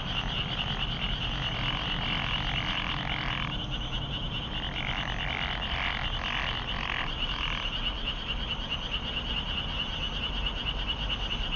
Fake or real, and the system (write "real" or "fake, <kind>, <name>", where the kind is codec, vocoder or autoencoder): real